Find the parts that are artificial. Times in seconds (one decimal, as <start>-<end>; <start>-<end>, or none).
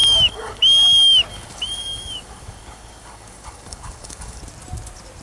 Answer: 0.0-0.6; 1.3-4.4